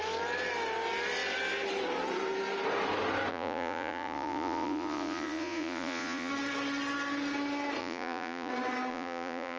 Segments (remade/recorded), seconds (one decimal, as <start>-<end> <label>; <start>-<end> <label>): 0.0-3.3 recorded; 3.3-6.3 remade; 6.3-7.8 recorded; 7.8-8.5 remade; 8.5-8.9 recorded; 8.9-9.6 remade